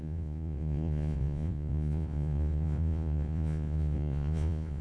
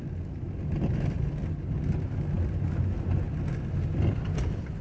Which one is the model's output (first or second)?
first